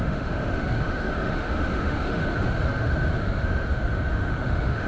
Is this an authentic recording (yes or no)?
no